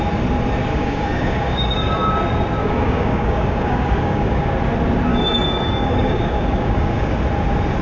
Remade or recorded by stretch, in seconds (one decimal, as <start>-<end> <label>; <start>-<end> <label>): 0.0-0.7 recorded; 0.7-2.1 remade; 2.1-2.6 recorded; 2.6-4.5 remade; 4.5-5.1 recorded; 5.1-7.1 remade; 7.1-7.8 recorded